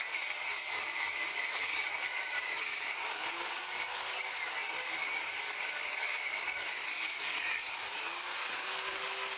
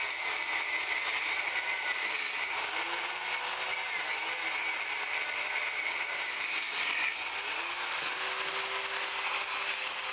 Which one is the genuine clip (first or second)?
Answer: second